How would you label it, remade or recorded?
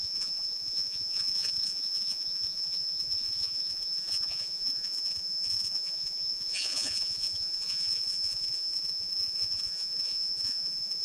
remade